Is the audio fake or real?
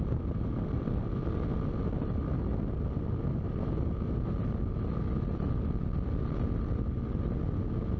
real